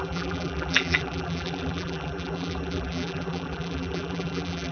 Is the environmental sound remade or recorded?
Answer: remade